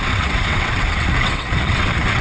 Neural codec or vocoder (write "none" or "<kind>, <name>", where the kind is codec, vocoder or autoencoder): vocoder, WaveNeXt